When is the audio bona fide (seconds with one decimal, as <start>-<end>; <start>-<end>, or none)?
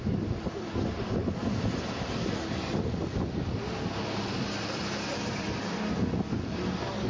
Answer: 0.0-7.1